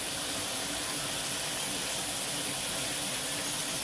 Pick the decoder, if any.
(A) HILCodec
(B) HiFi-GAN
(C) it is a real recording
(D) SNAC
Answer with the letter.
C